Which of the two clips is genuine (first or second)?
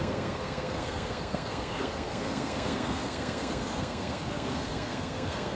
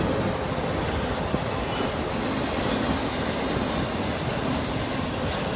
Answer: second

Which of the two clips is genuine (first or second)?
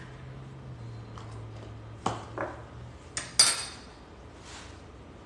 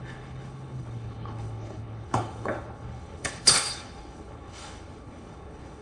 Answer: first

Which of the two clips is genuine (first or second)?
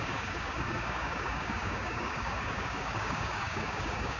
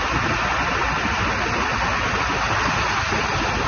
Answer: second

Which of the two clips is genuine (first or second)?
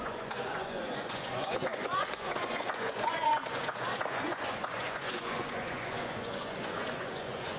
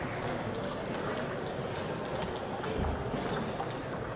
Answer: second